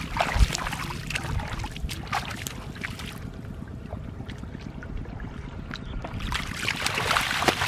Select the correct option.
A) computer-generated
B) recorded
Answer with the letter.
B